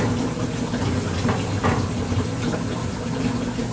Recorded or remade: recorded